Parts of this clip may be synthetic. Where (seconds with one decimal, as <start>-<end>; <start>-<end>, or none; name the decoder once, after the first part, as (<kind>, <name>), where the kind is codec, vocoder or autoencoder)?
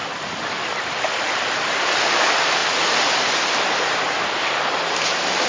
none